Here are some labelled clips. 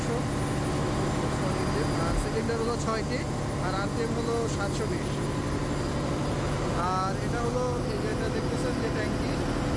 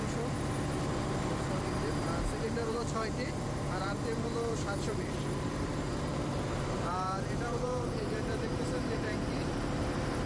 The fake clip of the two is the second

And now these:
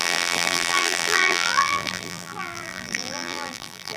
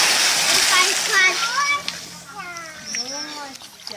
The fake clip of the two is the first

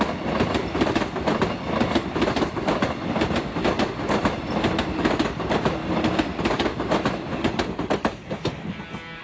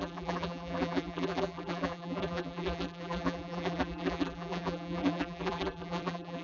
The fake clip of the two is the second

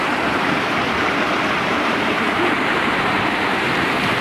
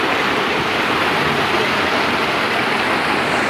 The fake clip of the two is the first